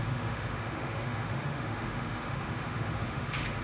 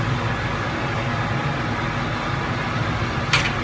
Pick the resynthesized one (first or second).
first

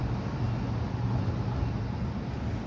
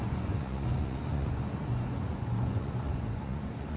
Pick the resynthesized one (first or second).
second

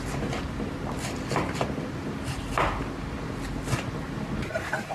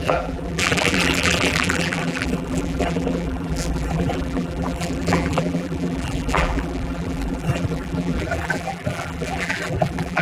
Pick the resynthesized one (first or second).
second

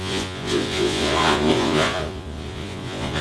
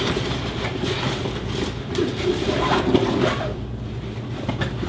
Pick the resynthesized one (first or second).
first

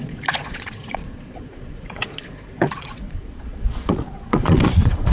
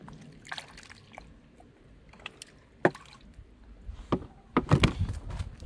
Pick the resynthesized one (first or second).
first